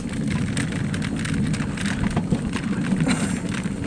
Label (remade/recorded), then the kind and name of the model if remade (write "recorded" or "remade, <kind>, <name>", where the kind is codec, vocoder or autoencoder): recorded